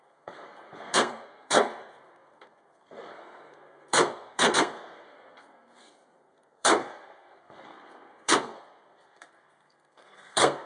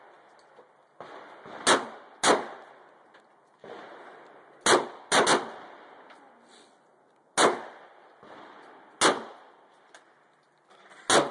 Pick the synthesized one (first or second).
first